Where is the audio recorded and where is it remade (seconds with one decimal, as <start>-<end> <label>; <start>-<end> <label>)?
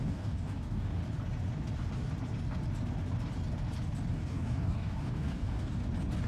0.0-1.0 remade; 1.0-4.1 recorded; 4.1-5.8 remade; 5.8-6.3 recorded